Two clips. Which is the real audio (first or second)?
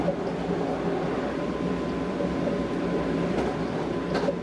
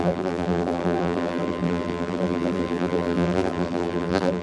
first